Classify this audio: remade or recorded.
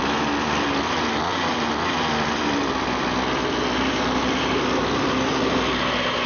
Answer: recorded